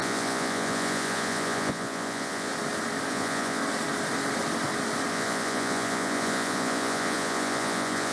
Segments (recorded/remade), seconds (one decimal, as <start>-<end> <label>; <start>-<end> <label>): 0.0-2.5 remade; 2.5-3.1 recorded; 3.1-3.6 remade; 3.6-5.1 recorded; 5.1-8.1 remade